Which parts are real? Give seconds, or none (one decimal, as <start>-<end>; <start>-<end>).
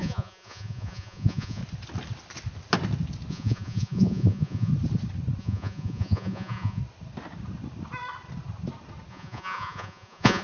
1.6-3.3; 4.7-5.4; 6.8-9.1